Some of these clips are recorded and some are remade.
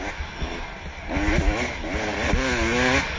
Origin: recorded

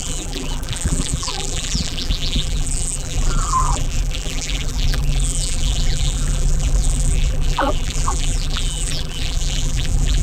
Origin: remade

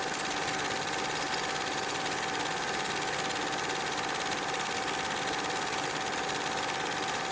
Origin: recorded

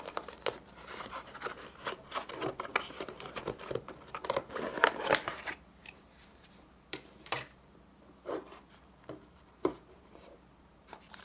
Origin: remade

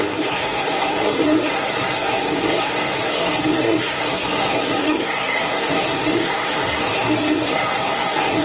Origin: remade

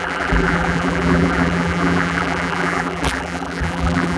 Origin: remade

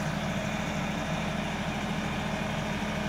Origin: recorded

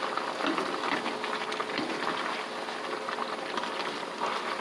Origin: recorded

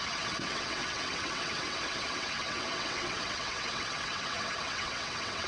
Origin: remade